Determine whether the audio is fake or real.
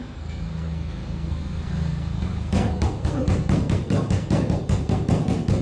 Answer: fake